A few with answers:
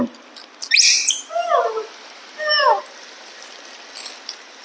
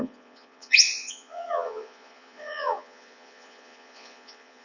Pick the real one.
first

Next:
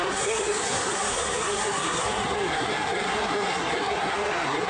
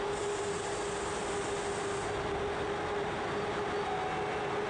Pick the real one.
second